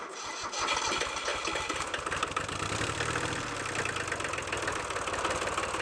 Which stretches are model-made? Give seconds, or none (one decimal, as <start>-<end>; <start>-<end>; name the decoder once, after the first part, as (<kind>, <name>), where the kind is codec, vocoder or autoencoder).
none